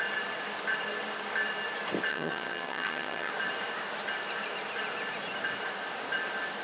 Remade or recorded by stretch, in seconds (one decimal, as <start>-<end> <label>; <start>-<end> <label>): 0.0-2.1 recorded; 2.1-3.3 remade; 3.3-6.6 recorded